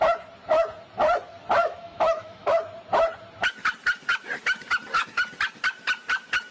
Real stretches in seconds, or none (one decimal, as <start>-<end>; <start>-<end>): 0.0-1.6; 2.5-6.5